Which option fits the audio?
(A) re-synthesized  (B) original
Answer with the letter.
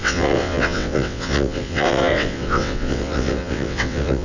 A